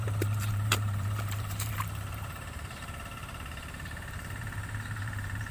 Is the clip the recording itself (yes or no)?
no